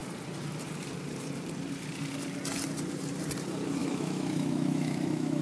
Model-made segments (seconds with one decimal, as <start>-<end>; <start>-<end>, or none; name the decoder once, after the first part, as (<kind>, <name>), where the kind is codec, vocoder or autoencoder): 3.8-5.4 (autoencoder, DAC-VAE)

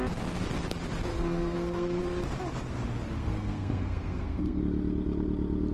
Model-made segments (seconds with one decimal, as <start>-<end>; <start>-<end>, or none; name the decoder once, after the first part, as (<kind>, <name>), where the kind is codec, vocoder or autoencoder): 1.1-2.0 (codec, SNAC); 3.2-4.6

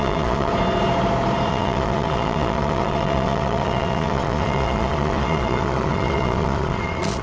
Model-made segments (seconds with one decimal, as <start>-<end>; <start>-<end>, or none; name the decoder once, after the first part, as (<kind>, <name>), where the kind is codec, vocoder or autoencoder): 0.0-0.5 (vocoder, Vocos); 1.5-7.2